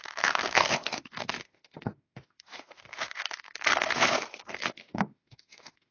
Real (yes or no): no